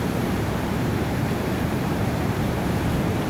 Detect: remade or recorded remade